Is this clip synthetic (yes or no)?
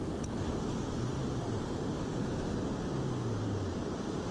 no